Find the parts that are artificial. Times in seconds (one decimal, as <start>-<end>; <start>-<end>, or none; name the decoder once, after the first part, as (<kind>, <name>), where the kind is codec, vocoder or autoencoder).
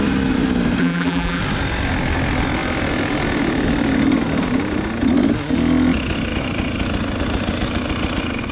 0.8-1.4 (vocoder, BigVGAN v2)